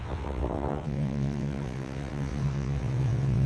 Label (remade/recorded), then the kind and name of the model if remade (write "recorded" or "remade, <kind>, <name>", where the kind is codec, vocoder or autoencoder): remade, vocoder, WaveNeXt